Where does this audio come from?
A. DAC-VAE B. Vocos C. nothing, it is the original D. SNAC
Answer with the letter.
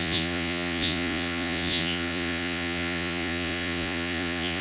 B